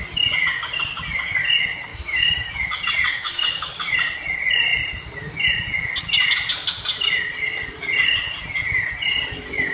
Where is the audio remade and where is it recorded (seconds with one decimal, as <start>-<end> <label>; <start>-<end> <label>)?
0.0-1.9 recorded; 1.9-2.5 remade; 2.5-3.1 recorded; 3.1-3.7 remade; 3.7-9.7 recorded